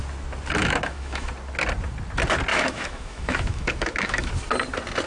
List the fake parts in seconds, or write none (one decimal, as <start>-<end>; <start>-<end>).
0.6-1.3; 2.5-4.3

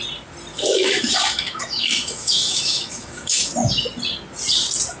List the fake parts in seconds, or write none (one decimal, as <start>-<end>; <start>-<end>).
0.5-3.5

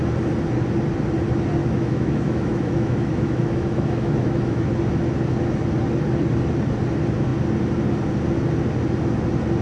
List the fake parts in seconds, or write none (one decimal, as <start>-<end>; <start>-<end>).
1.6-4.7

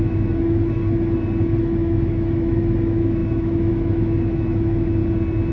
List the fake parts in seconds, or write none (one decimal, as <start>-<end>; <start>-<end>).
0.0-0.8; 1.6-5.0